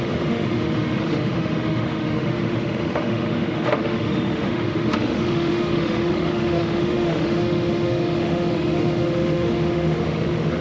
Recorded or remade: remade